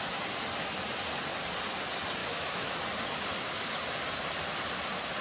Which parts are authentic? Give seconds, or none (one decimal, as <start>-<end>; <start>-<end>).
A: 0.0-2.2; 2.8-5.2